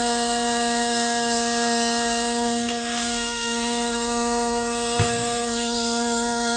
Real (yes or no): no